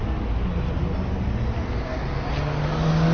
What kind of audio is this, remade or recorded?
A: recorded